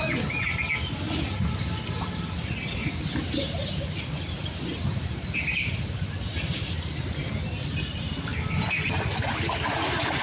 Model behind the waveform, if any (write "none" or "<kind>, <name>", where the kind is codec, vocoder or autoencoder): none